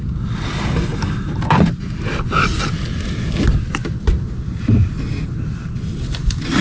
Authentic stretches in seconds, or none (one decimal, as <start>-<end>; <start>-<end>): 0.0-6.6